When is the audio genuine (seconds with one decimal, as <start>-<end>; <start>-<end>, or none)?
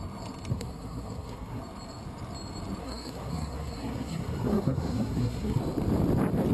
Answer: 0.0-0.5; 1.6-2.8; 5.6-6.5